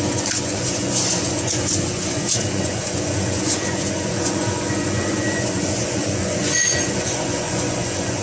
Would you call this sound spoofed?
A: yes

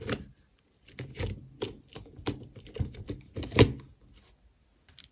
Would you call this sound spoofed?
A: no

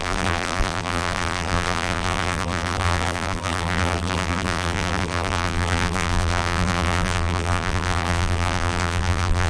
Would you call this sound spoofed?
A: yes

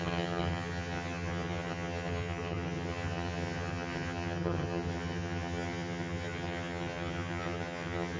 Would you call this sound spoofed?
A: yes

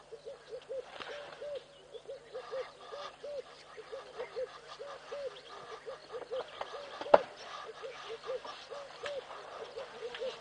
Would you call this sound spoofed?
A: no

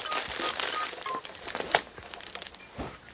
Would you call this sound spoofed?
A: no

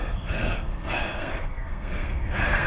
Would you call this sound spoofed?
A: yes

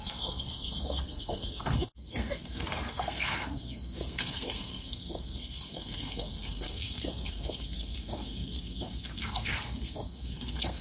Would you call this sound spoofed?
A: yes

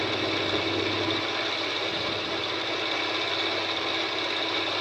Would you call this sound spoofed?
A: no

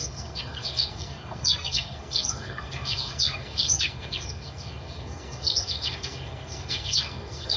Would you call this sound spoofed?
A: yes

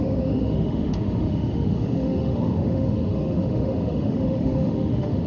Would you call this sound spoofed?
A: yes